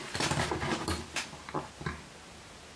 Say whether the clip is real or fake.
real